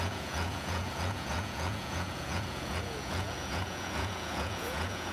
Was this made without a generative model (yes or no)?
no